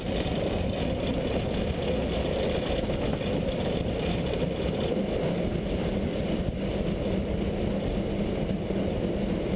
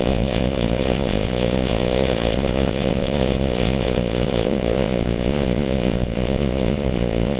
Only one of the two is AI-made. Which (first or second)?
second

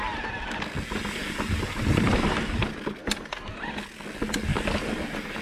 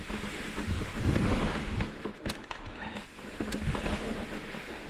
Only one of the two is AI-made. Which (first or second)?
second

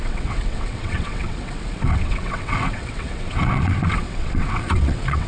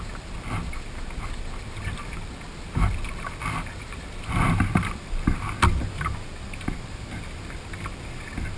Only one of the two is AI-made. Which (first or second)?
first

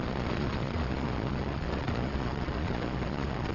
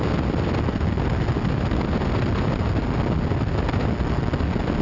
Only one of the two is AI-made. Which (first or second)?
first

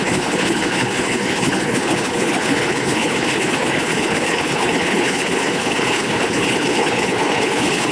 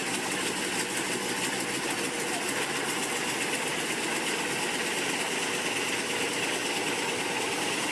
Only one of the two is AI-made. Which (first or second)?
first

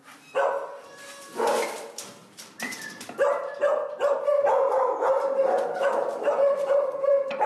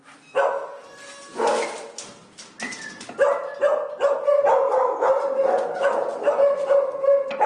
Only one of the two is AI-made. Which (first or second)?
first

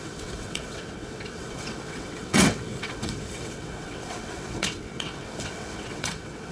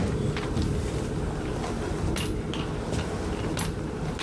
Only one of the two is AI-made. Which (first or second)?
first